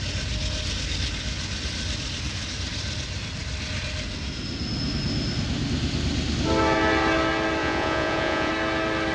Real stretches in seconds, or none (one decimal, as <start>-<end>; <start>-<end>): 0.0-7.6; 8.5-9.1